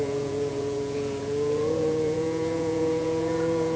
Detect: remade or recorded remade